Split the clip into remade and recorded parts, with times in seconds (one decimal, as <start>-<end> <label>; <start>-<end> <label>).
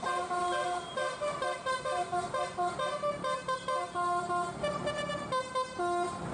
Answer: 0.0-6.3 recorded